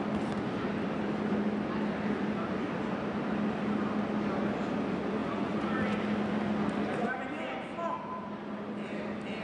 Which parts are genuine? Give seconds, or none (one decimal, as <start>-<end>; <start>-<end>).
0.0-5.2; 5.7-9.4